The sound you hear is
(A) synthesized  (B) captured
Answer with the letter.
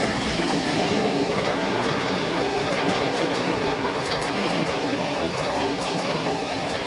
A